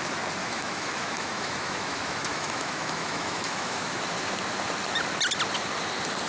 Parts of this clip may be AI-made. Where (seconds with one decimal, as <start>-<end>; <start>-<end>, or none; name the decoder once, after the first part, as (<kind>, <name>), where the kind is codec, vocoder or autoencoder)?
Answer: 0.4-4.0 (autoencoder, DAC-VAE)